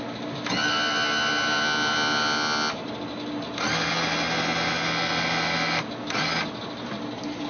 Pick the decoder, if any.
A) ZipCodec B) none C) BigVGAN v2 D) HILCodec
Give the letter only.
B